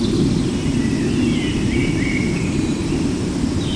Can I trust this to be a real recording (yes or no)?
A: yes